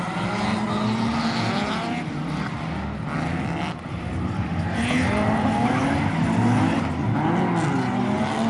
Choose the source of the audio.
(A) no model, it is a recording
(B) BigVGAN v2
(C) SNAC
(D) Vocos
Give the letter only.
A